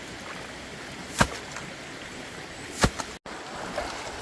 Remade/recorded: recorded